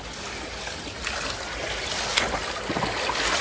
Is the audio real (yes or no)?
yes